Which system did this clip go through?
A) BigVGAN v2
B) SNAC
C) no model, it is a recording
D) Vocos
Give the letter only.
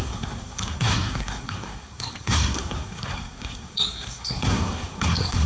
B